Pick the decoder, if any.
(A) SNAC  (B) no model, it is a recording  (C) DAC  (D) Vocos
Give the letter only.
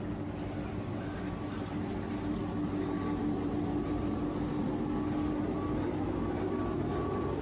B